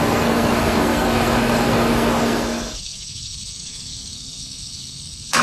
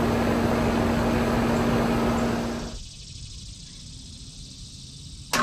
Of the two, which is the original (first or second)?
second